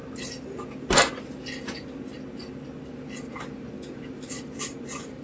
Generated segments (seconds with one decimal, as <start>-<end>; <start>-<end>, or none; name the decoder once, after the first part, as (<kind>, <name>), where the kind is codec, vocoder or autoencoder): 3.1-5.2 (vocoder, BigVGAN v2)